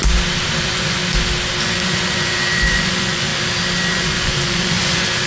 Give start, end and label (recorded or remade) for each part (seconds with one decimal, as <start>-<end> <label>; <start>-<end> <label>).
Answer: 0.0-0.6 recorded; 0.6-1.0 remade; 1.0-1.6 recorded; 1.6-3.3 remade; 3.3-3.8 recorded; 3.8-5.3 remade